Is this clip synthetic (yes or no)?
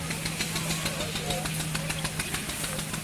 no